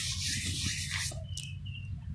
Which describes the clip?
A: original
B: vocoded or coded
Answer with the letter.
A